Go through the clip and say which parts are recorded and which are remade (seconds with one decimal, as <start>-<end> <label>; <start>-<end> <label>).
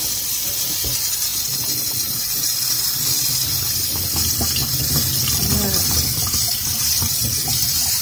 0.0-4.6 recorded; 4.6-7.5 remade; 7.5-8.0 recorded